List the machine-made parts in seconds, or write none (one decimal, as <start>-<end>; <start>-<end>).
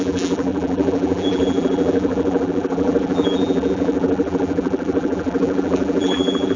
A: 0.0-6.6